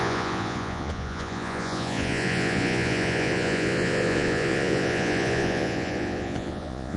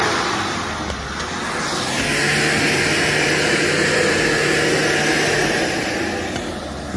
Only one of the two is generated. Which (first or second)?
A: first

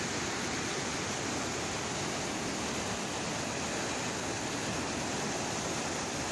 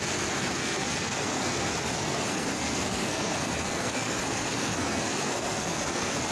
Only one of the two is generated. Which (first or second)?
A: second